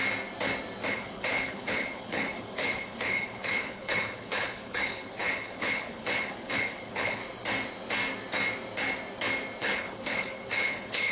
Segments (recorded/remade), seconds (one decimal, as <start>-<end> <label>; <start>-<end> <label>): 0.0-0.9 recorded; 0.9-7.2 remade; 7.2-9.6 recorded; 9.6-11.1 remade